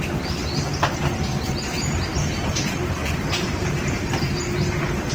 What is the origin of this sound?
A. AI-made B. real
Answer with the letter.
B